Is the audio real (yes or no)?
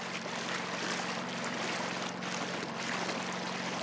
yes